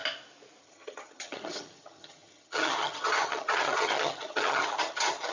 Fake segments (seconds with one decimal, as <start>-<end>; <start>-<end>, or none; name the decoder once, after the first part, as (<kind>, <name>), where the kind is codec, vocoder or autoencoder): 0.6-5.3 (vocoder, HiFi-GAN)